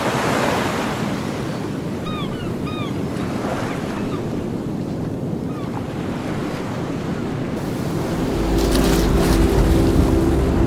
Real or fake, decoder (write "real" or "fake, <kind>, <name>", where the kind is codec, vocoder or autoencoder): real